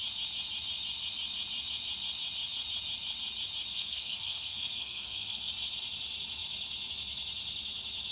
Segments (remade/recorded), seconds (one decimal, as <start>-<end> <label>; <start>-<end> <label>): 0.0-3.7 recorded; 3.7-5.5 remade; 5.5-8.1 recorded